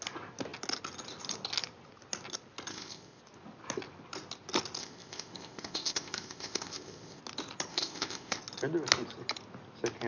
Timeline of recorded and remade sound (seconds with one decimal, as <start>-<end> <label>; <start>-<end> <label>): 0.0-2.7 recorded; 2.7-3.2 remade; 3.2-4.8 recorded; 4.8-7.2 remade; 7.2-7.7 recorded; 7.7-8.4 remade; 8.4-10.1 recorded